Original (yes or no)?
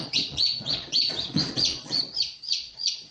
no